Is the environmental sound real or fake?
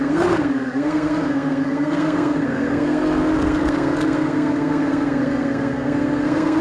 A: fake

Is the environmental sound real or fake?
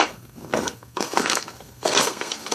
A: fake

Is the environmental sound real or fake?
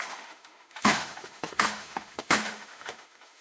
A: fake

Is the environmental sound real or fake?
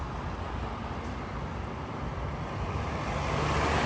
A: real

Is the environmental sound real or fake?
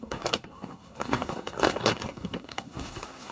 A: fake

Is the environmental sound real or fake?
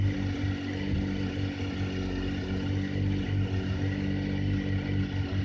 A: real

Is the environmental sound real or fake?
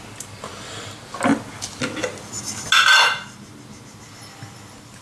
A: real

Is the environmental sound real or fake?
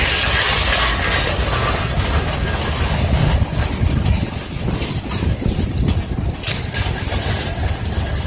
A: real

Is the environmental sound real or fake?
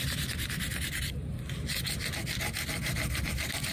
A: real